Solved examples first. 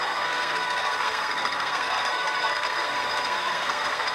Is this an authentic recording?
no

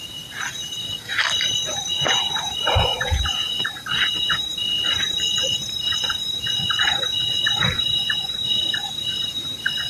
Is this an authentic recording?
no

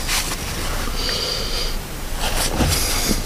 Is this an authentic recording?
yes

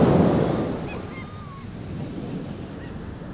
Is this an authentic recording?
yes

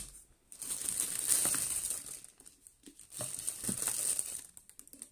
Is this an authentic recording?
yes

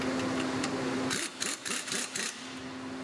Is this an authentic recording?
yes